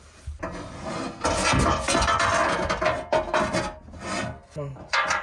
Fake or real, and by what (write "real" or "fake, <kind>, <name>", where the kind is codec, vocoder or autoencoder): real